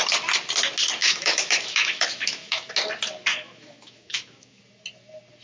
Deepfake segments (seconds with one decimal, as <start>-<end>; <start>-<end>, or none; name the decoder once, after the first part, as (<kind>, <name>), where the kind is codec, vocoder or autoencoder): 1.0-2.7 (autoencoder, DAC-VAE); 3.3-4.6